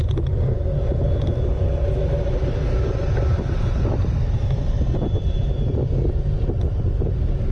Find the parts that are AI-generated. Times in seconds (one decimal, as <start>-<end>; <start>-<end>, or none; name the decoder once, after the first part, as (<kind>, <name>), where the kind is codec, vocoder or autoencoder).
2.0-5.4 (vocoder, BigVGAN v2)